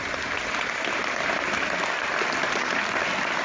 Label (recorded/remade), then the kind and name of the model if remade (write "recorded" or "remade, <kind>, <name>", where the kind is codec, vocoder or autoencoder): recorded